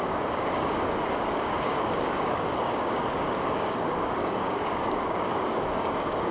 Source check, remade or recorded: remade